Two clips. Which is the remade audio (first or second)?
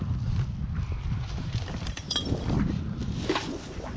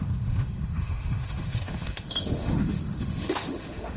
second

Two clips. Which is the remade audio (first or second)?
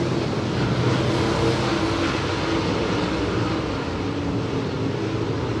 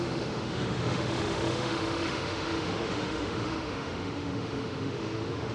second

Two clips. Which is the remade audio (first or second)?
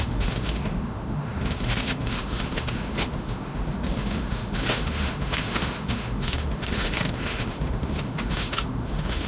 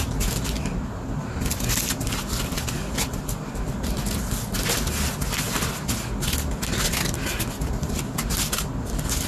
first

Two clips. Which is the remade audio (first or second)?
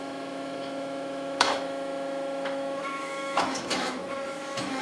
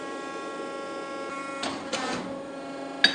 first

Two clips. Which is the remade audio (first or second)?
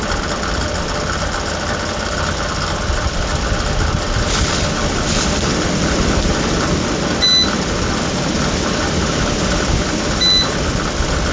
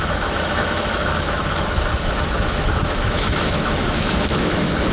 second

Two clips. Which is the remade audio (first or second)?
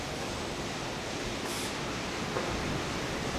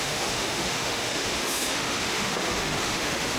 second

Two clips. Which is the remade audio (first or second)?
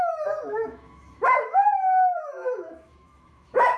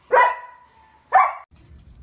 first